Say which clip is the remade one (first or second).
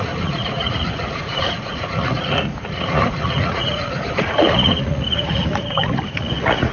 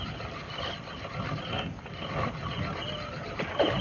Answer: first